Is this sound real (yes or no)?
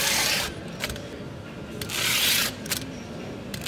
yes